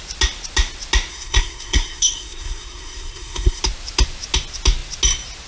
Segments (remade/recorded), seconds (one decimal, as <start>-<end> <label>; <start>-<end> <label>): 0.0-1.1 recorded; 1.1-3.6 remade; 3.6-5.5 recorded